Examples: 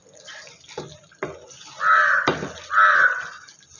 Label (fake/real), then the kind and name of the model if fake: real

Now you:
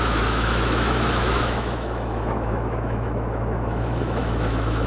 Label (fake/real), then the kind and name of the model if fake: fake, autoencoder, DAC-VAE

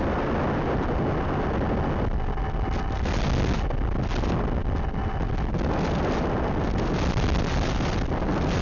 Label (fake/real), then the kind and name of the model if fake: real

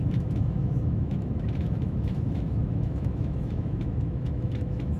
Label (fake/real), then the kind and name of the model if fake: fake, autoencoder, DAC-VAE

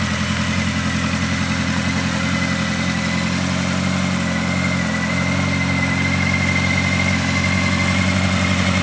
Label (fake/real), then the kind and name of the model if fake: real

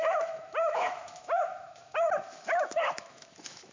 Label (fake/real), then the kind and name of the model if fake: fake, autoencoder, DAC-VAE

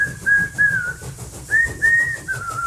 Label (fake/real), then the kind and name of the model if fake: real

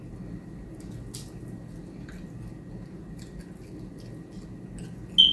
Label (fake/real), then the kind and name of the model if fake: real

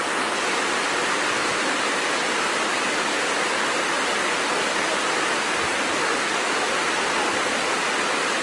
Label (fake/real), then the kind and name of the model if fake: real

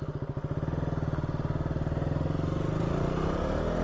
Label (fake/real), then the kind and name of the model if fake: real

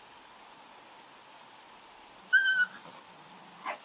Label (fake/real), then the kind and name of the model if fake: real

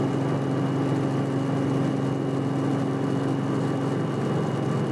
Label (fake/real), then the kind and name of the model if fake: real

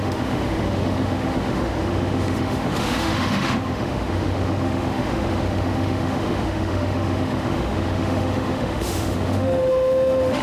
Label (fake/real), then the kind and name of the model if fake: fake, autoencoder, DAC-VAE